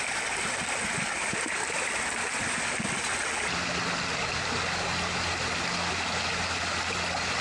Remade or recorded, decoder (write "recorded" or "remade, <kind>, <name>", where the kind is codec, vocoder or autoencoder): recorded